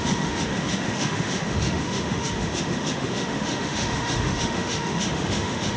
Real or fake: fake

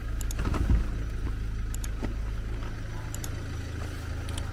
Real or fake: real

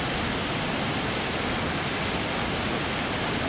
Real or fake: real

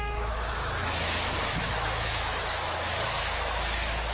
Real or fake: fake